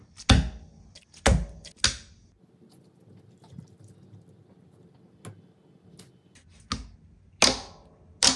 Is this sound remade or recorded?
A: recorded